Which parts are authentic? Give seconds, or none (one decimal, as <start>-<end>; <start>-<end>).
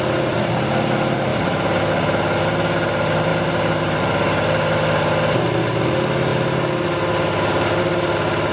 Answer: 0.0-1.3; 1.8-3.3; 4.0-8.5